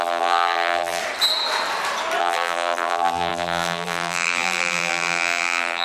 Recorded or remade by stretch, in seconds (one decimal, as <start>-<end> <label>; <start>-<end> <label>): 0.0-1.0 remade; 1.0-2.2 recorded; 2.2-5.8 remade

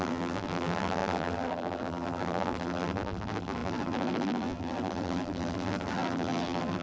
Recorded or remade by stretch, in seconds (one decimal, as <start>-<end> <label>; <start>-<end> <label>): 0.0-6.8 remade